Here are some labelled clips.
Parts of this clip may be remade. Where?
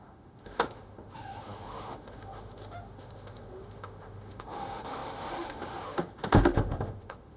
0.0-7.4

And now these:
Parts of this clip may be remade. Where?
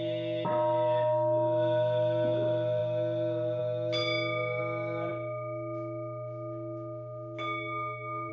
none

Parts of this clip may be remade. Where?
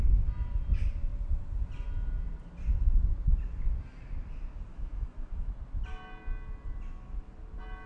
4.7-5.5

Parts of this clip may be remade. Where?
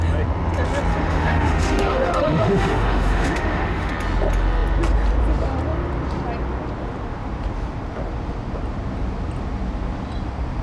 0.9-3.9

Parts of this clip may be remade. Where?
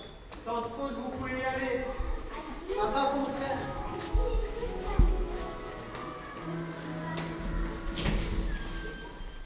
1.8-2.5; 3.2-5.7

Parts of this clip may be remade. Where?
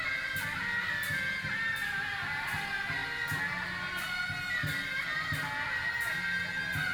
none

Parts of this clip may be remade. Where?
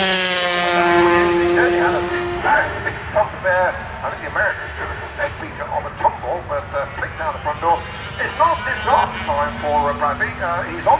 2.1-3.1; 4.5-5.4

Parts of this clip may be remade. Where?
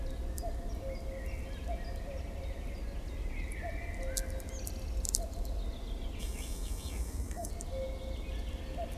6.2-7.5